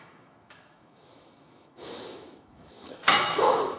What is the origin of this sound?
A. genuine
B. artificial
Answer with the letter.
B